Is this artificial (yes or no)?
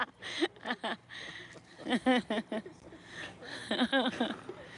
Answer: no